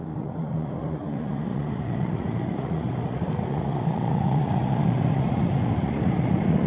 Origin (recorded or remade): remade